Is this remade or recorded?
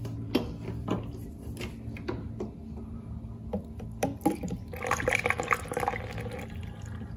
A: recorded